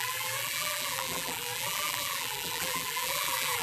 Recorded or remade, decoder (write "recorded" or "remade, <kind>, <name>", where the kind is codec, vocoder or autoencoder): remade, vocoder, BigVGAN v2